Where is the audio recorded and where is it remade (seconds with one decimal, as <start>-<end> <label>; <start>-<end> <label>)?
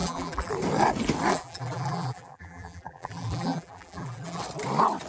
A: 0.0-0.5 remade; 0.5-1.3 recorded; 1.3-4.4 remade; 4.4-5.1 recorded